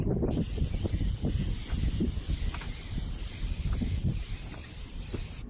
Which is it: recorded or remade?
recorded